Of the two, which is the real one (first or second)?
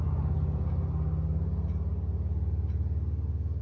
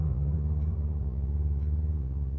first